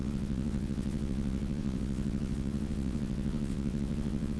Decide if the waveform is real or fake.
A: fake